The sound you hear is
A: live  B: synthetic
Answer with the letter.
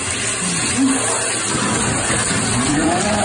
A